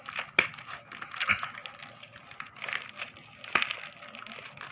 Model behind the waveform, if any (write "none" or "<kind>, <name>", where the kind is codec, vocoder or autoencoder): none